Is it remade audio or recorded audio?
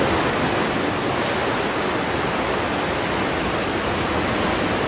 recorded